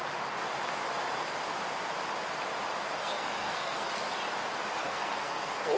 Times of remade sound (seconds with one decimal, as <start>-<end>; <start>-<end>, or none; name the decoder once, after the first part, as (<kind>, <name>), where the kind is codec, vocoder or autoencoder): 3.0-3.9 (codec, SNAC); 4.8-5.8